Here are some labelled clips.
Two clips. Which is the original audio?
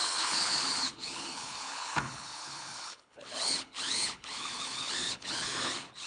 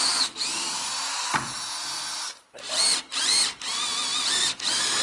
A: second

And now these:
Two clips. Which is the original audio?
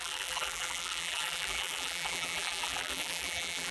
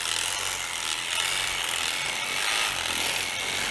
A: second